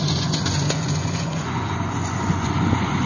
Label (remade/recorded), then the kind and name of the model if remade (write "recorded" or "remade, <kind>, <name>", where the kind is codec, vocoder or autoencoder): remade, vocoder, Vocos